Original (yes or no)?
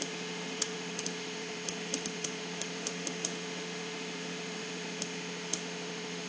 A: no